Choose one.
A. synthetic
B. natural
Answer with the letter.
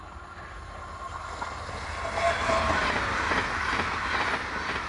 B